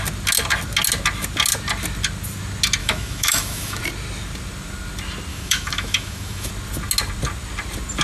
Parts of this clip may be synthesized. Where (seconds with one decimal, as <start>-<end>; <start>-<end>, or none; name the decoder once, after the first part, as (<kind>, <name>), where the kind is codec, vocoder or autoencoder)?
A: 2.8-3.8 (autoencoder, DAC-VAE); 5.3-6.5